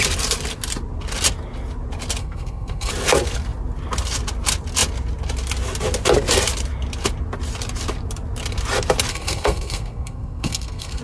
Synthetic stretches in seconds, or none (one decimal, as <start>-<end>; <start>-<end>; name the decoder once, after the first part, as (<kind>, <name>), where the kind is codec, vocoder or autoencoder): 2.2-2.9 (codec, SNAC); 9.1-11.0